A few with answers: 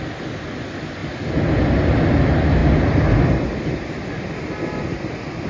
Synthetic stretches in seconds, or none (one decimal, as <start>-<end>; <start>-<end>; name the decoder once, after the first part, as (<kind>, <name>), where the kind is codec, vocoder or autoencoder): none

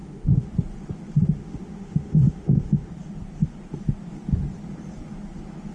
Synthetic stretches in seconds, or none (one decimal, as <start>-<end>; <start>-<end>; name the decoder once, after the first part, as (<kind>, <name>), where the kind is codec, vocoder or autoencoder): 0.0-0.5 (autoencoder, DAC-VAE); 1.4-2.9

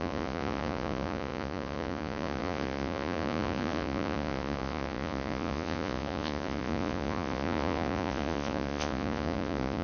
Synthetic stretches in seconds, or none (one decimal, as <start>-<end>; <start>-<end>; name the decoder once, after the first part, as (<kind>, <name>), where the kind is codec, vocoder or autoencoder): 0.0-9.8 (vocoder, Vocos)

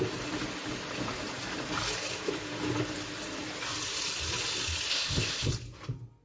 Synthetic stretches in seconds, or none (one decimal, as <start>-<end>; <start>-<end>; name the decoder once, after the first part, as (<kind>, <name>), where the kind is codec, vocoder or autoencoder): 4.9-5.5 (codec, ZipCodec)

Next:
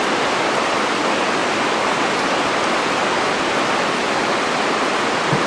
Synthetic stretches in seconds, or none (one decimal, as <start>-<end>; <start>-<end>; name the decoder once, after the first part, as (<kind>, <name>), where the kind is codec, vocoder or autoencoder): none

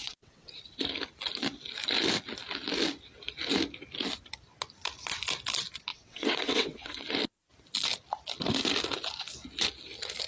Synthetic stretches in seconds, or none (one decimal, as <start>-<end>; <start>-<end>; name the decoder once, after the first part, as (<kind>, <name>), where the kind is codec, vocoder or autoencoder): 0.0-0.6 (vocoder, WaveNeXt); 5.9-7.0

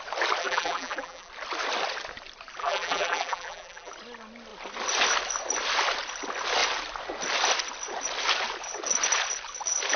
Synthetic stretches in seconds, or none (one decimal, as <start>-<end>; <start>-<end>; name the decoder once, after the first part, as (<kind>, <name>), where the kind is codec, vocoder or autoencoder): 0.4-1.3 (vocoder, BigVGAN v2); 2.6-3.9